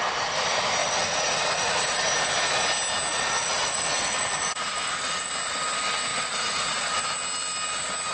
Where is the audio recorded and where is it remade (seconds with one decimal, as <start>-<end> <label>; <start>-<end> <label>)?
0.0-0.8 recorded; 0.8-2.0 remade; 2.0-3.1 recorded; 3.1-5.3 remade; 5.3-6.1 recorded; 6.1-7.0 remade; 7.0-8.1 recorded

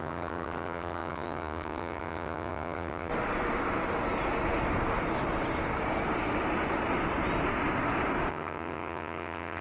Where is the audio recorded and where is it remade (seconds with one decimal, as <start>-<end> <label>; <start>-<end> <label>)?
0.0-3.1 remade; 3.1-8.3 recorded; 8.3-9.6 remade

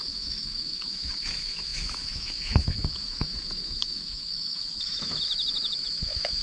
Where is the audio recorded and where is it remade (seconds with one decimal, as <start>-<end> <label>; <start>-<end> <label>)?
0.0-6.4 remade

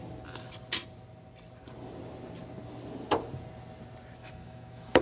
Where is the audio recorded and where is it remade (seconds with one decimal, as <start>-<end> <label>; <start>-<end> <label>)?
0.0-4.2 recorded; 4.2-5.0 remade